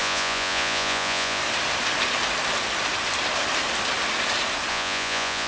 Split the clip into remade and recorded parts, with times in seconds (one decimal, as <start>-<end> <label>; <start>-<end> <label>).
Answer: 0.0-1.4 remade; 1.4-4.7 recorded; 4.7-5.5 remade